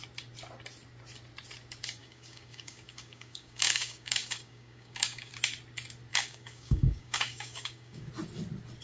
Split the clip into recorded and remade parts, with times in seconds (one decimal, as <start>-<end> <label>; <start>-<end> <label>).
0.0-2.0 recorded; 2.0-5.3 remade; 5.3-6.1 recorded; 6.1-8.1 remade; 8.1-8.8 recorded